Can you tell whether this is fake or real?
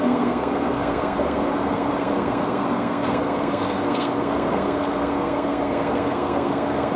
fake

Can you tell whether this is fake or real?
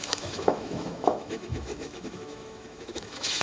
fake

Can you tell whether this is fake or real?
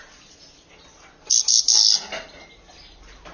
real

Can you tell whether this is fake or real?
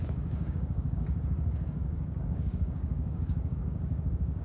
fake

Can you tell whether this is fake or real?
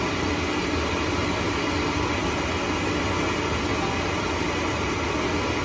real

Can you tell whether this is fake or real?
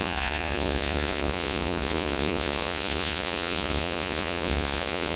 fake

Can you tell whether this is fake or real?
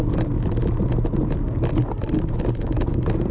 real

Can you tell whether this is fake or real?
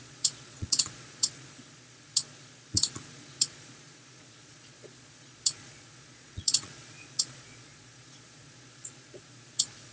fake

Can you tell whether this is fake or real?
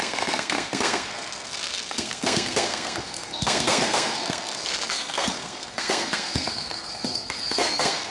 fake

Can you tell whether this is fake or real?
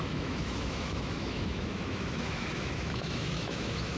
fake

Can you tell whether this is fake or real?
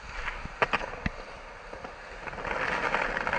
real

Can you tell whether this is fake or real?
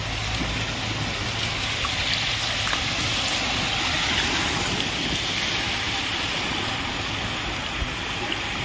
real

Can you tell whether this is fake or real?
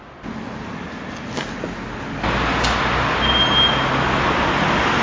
real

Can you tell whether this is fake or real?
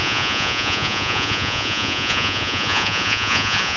fake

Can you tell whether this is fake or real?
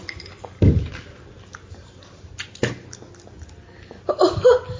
real